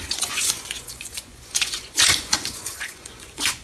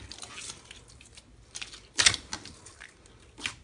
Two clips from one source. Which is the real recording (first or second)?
second